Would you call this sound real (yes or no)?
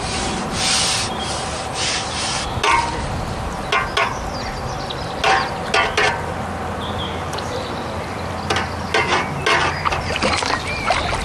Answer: yes